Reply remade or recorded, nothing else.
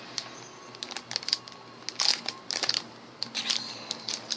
recorded